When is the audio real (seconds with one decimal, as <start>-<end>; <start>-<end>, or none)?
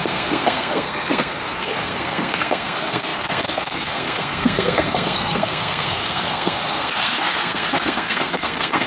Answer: none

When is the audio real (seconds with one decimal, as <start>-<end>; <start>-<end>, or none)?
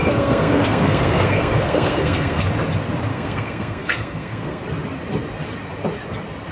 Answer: 2.5-3.1; 4.6-6.5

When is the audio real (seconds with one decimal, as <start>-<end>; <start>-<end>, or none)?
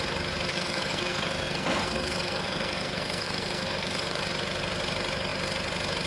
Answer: 0.0-0.5; 4.2-6.1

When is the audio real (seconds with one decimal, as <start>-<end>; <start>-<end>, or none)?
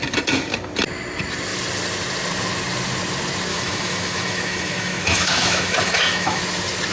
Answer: 0.0-3.5; 6.4-6.9